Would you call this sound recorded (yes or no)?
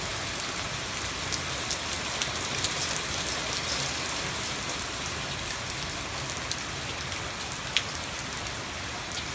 yes